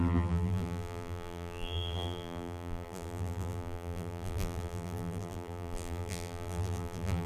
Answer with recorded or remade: remade